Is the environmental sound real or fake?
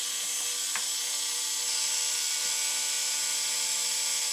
real